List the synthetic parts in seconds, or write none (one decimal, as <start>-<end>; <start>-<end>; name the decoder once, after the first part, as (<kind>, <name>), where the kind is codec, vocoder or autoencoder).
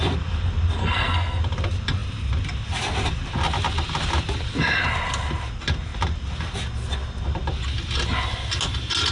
0.8-1.4 (codec, SNAC)